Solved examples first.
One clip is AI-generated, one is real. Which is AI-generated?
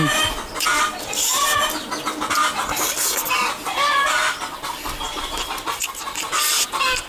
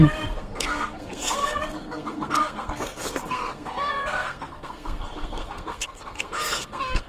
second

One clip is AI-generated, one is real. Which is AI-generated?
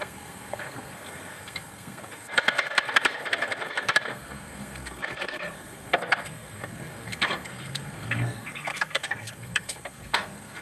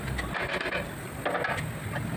first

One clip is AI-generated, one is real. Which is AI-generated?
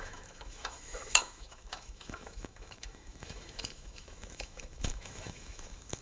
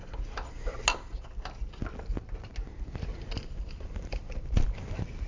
first